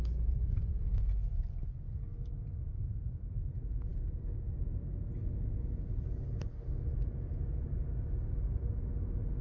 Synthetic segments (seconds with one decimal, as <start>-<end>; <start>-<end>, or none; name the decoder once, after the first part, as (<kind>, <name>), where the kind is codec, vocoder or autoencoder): none